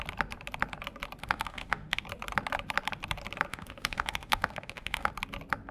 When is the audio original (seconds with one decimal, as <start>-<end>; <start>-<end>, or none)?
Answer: 0.0-1.2; 2.0-3.5; 5.1-5.7